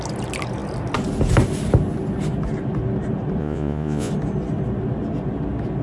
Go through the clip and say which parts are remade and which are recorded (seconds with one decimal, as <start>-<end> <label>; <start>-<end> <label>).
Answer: 0.0-3.4 recorded; 3.4-4.1 remade; 4.1-5.8 recorded